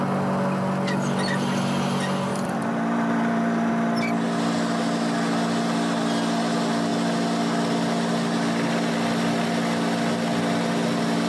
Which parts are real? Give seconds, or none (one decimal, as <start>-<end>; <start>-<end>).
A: 0.0-2.3; 3.7-11.3